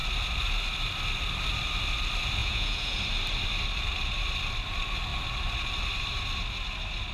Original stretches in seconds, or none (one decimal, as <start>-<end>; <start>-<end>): 0.0-2.4; 3.0-7.1